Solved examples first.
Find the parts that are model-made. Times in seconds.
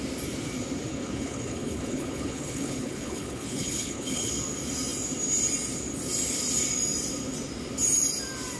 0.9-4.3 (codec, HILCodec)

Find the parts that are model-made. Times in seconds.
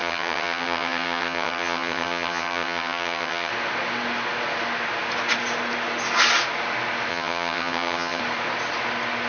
0.0-3.5 (vocoder, HiFi-GAN); 7.1-8.2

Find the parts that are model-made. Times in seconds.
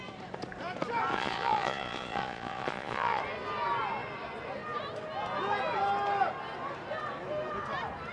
1.1-3.2 (vocoder, Vocos)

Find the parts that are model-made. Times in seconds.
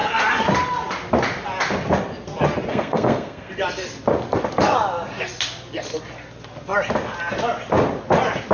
2.7-3.5 (codec, SNAC)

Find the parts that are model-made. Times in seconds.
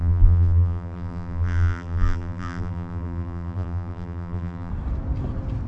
0.0-4.7 (vocoder, BigVGAN v2)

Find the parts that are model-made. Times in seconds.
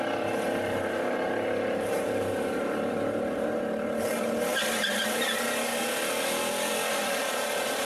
0.0-4.5 (vocoder, BigVGAN v2); 5.0-5.7; 6.9-7.8